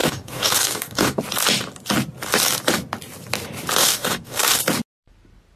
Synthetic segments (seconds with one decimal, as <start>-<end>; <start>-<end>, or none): 0.0-1.2; 3.8-4.6